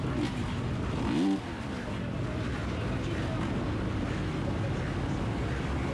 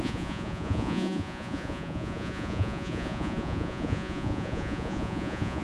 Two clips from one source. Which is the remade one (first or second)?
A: second